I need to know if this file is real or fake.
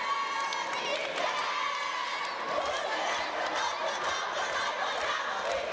real